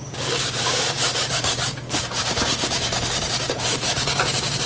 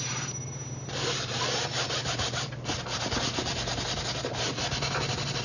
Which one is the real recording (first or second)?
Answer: second